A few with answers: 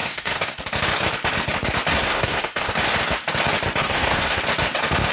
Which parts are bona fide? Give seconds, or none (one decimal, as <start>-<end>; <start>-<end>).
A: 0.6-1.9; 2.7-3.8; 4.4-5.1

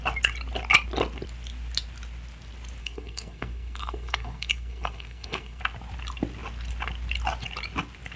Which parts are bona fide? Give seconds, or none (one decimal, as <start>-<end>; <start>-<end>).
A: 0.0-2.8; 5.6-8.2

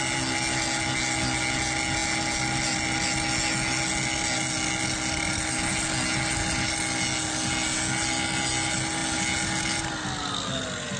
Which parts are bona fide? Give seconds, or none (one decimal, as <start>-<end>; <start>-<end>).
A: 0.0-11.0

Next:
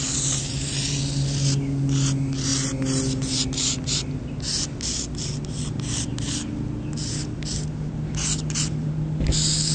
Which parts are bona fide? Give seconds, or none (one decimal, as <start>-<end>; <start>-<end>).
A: 0.0-9.7

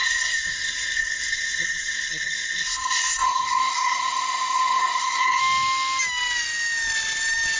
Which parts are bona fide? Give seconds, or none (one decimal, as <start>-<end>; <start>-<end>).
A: 5.4-7.6

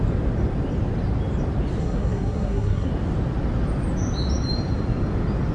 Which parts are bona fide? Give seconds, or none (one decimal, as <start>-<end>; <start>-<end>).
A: 0.0-1.8; 2.9-5.5

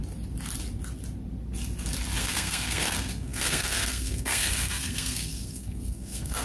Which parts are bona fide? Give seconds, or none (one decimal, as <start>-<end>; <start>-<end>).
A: 0.0-2.2

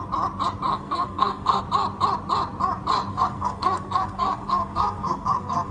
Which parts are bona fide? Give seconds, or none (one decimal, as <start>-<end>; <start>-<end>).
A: 0.0-0.7; 1.6-3.1